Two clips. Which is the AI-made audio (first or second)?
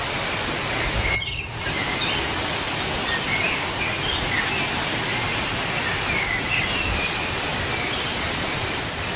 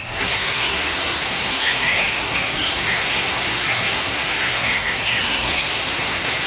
second